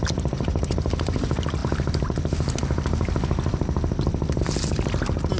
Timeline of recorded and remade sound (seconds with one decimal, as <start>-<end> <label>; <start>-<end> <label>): 0.0-5.4 recorded